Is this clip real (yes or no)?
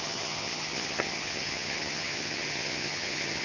no